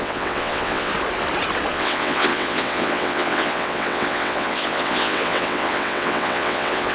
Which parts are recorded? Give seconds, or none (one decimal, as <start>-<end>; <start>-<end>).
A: 0.9-1.7